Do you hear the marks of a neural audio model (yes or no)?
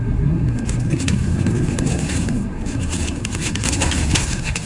yes